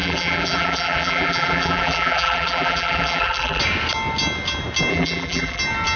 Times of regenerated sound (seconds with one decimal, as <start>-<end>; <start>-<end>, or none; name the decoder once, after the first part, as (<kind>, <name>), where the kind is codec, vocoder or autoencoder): 0.0-3.6 (vocoder, BigVGAN v2); 4.9-5.6